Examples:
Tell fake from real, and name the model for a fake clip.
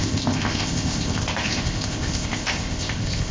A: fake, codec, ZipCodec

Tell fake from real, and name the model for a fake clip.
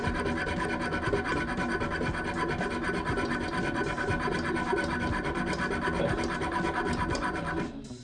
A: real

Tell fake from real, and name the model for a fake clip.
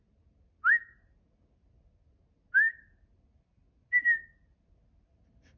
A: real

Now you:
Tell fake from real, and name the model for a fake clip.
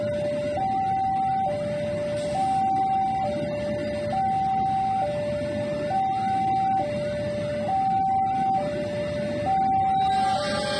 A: real